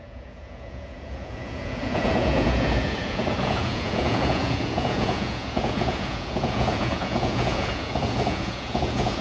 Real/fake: fake